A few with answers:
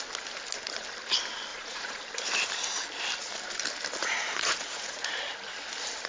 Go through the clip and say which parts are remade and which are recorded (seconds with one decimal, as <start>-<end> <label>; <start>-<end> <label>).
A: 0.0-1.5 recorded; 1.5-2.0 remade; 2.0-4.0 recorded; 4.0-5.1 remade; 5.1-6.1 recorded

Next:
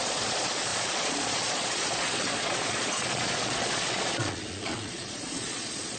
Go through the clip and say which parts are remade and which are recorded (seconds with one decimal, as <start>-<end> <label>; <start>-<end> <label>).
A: 0.0-6.0 remade

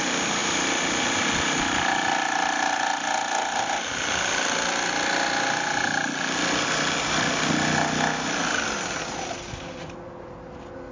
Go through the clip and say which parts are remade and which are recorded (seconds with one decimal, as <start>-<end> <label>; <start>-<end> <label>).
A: 0.0-10.9 recorded